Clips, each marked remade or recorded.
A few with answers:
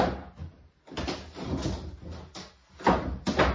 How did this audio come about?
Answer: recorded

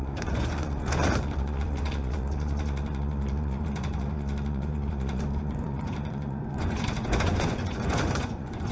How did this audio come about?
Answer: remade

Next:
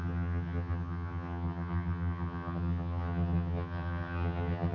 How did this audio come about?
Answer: remade